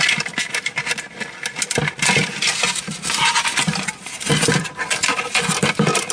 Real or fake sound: real